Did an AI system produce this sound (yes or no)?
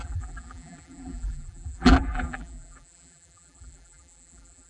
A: yes